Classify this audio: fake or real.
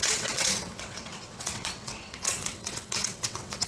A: fake